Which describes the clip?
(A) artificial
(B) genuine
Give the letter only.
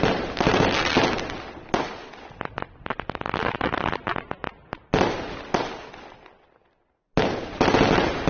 B